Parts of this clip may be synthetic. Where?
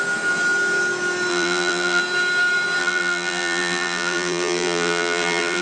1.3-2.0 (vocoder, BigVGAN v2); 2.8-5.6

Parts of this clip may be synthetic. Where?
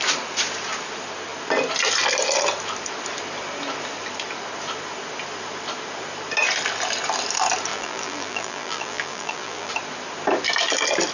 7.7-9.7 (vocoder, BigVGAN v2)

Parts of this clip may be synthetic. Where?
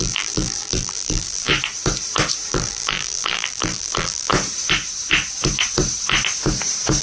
0.0-1.5 (vocoder, BigVGAN v2); 2.5-4.3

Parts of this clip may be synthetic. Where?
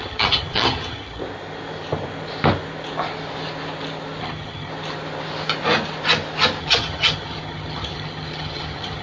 0.0-1.2 (vocoder, HiFi-GAN); 4.2-4.7; 6.6-9.0